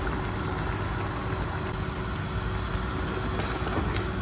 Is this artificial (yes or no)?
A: no